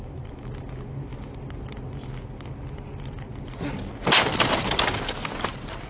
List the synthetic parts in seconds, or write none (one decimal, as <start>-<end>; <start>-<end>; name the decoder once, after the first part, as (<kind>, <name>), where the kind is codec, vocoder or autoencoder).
none